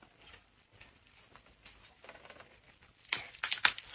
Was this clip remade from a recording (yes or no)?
no